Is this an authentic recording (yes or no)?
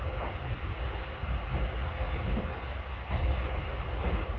yes